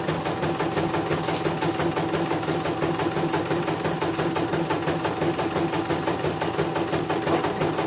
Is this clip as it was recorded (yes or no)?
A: yes